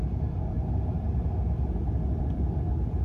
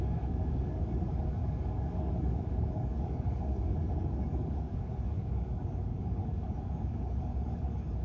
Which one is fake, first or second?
second